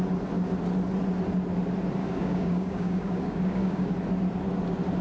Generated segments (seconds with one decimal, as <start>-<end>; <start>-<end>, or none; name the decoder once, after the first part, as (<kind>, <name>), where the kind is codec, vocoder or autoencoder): 2.0-3.9 (codec, DAC)